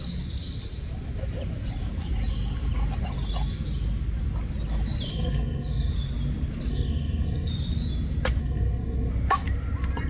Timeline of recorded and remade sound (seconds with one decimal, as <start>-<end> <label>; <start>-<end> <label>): 0.0-5.1 recorded; 5.1-5.9 remade; 5.9-6.7 recorded; 6.7-7.5 remade; 7.5-8.4 recorded; 8.4-9.1 remade; 9.1-10.1 recorded